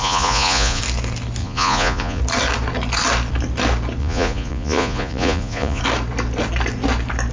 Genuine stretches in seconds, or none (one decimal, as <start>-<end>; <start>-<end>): 0.8-1.4; 2.2-4.0; 5.8-7.3